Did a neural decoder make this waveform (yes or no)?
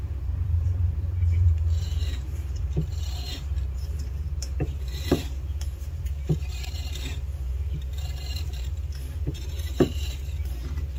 yes